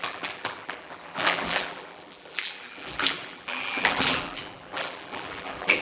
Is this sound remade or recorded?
remade